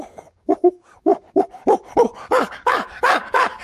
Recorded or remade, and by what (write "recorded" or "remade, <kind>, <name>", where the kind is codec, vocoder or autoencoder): remade, codec, DAC